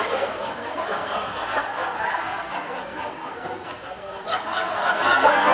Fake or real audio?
fake